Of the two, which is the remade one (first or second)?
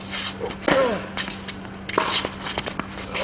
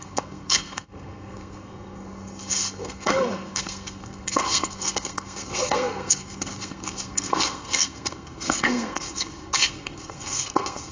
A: second